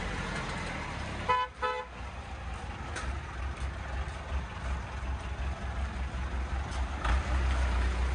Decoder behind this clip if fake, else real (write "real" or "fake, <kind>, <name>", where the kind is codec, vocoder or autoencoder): real